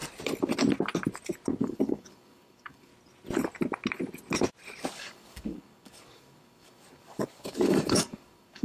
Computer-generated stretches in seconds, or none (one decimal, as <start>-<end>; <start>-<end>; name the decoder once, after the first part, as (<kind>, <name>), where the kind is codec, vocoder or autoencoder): 1.6-2.9 (codec, DAC); 4.9-8.6